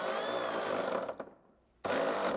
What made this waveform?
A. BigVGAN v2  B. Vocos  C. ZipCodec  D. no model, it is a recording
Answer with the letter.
D